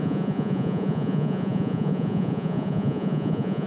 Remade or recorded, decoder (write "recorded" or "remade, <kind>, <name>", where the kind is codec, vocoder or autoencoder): remade, vocoder, Vocos